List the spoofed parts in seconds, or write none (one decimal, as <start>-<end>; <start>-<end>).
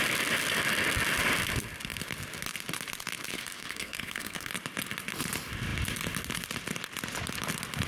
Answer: 3.3-4.5